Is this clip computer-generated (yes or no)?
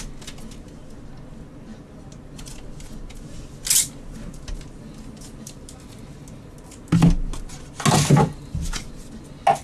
no